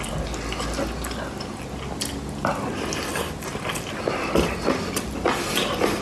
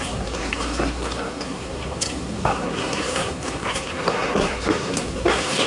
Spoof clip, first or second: second